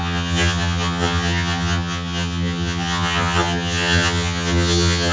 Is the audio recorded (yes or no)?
no